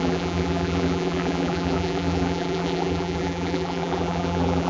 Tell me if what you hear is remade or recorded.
remade